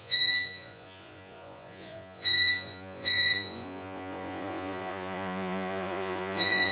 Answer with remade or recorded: remade